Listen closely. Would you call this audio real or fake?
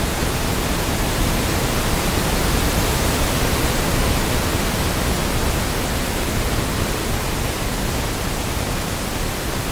real